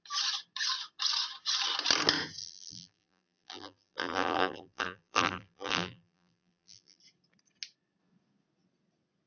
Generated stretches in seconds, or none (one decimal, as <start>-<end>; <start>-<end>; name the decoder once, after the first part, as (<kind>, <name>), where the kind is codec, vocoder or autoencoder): 2.4-7.0 (vocoder, BigVGAN v2)